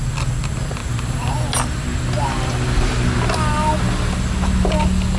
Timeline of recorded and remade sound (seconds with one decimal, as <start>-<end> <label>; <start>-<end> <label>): 0.0-0.8 recorded; 0.8-1.3 remade; 1.3-5.2 recorded